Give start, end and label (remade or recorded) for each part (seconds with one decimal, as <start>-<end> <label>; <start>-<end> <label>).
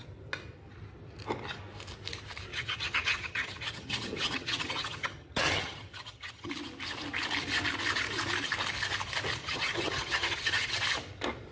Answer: 0.0-2.5 recorded; 2.5-6.5 remade; 6.5-9.4 recorded; 9.4-10.7 remade; 10.7-11.5 recorded